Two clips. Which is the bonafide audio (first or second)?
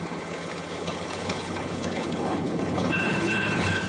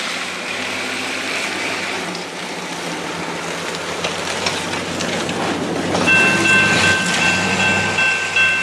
second